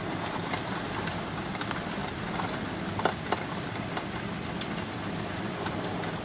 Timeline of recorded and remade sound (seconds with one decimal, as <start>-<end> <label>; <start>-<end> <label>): 0.0-6.2 recorded